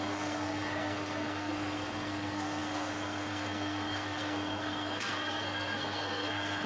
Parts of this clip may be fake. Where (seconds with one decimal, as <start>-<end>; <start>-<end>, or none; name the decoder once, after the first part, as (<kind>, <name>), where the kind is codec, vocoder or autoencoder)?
0.0-6.7 (codec, SNAC)